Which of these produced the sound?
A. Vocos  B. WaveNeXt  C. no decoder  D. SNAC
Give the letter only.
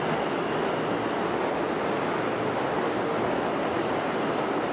C